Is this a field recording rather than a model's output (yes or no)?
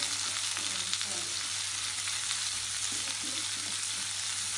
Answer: yes